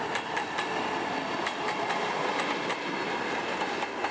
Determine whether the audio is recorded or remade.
recorded